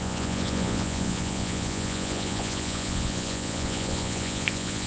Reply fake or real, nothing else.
fake